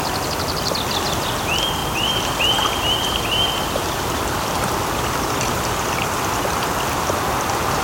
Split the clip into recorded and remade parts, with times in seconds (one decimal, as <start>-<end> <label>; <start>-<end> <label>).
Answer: 0.0-1.8 recorded; 1.8-6.2 remade; 6.2-7.8 recorded

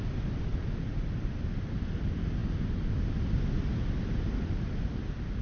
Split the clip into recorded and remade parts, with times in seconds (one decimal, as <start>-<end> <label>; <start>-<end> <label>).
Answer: 0.0-5.4 recorded

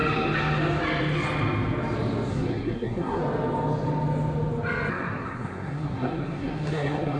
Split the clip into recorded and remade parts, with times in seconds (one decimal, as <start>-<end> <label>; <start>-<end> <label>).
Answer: 0.0-2.3 recorded; 2.3-3.2 remade; 3.2-4.9 recorded; 4.9-7.2 remade

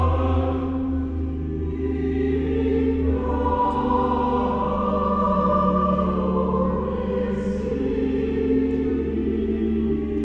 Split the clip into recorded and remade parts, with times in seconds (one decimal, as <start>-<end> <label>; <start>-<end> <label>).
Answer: 0.0-10.2 recorded

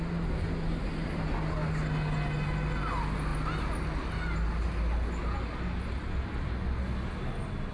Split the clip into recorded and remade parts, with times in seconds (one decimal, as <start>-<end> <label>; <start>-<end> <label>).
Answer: 0.0-7.7 recorded